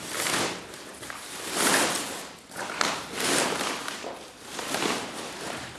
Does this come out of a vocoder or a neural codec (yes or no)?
no